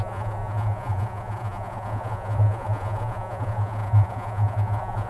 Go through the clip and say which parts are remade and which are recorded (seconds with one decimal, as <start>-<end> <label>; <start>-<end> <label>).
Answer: 0.0-5.1 remade